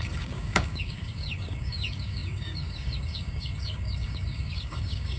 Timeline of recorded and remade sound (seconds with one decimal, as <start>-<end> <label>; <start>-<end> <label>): 0.0-5.2 remade